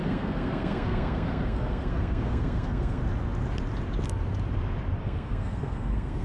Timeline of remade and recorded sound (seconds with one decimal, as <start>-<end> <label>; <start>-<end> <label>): 0.0-3.0 remade; 3.0-5.0 recorded; 5.0-6.2 remade